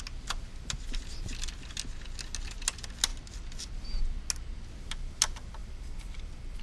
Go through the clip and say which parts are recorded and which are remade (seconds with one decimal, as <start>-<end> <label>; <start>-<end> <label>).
0.0-5.6 recorded; 5.6-6.6 remade